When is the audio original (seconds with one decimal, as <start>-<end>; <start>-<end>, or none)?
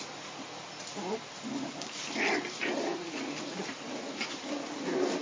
0.0-5.2